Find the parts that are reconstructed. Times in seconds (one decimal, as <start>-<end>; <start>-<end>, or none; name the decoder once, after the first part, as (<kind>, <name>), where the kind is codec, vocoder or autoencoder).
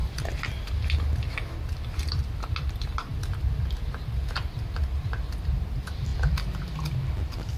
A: none